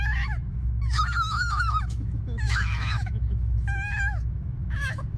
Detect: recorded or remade remade